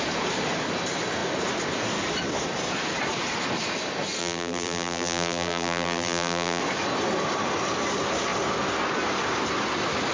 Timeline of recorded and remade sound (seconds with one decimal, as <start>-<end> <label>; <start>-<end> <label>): 0.0-4.2 recorded; 4.2-6.6 remade; 6.6-10.1 recorded